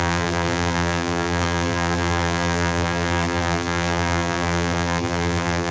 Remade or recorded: remade